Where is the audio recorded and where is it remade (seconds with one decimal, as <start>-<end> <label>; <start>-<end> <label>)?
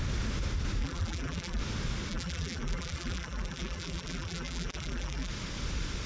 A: 0.0-0.8 recorded; 0.8-1.6 remade; 1.6-2.1 recorded; 2.1-5.3 remade; 5.3-6.1 recorded